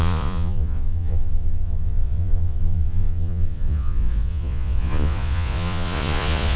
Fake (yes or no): yes